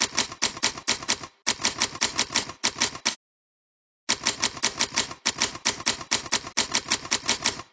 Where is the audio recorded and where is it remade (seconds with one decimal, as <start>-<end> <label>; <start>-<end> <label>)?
0.0-7.7 recorded